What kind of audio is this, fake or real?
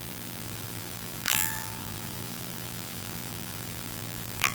fake